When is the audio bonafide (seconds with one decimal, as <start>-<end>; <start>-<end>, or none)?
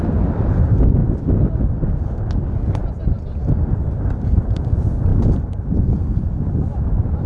0.0-1.0; 1.6-5.1; 6.0-7.3